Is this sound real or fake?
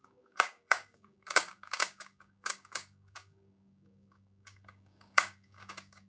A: fake